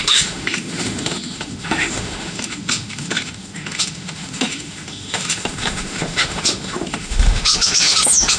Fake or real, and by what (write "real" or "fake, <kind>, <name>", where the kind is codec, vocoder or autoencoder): fake, autoencoder, DAC-VAE